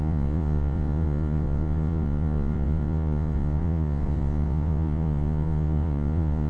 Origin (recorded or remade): remade